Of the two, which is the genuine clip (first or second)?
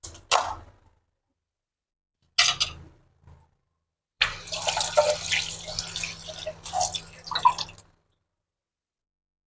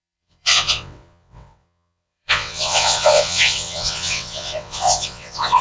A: first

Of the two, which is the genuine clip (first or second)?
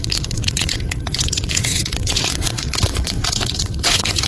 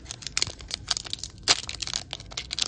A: second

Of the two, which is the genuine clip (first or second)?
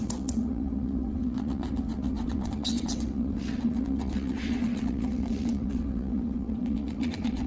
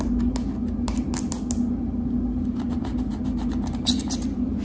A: second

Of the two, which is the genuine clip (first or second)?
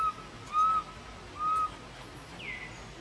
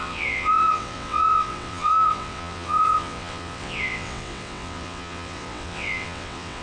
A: first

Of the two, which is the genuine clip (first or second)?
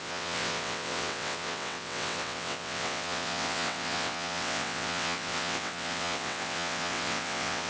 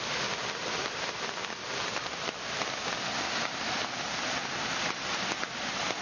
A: second